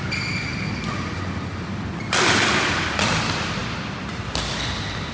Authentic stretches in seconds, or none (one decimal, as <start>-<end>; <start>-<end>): 0.0-5.1